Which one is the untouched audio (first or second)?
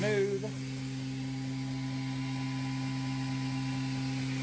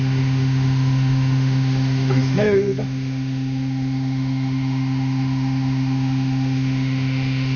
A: first